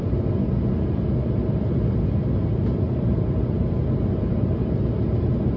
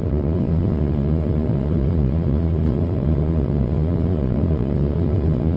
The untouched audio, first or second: first